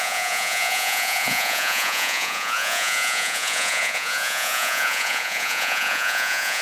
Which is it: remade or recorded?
remade